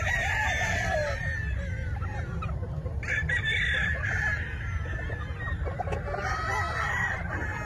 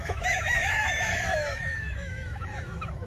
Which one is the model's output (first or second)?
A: second